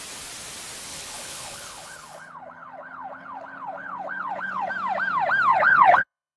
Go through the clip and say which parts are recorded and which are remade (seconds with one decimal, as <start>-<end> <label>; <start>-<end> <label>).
0.0-0.9 recorded; 0.9-4.7 remade; 4.7-5.5 recorded; 5.5-6.4 remade